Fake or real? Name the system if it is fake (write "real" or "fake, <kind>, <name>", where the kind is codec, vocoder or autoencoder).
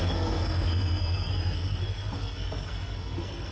fake, codec, SNAC